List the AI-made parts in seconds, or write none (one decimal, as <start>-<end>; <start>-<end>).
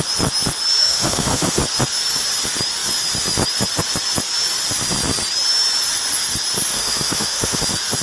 0.8-1.6; 6.7-7.6